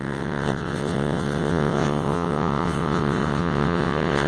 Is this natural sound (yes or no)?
no